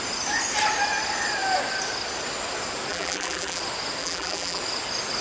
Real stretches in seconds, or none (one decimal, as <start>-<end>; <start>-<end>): 0.0-2.9; 3.6-4.0; 4.6-5.2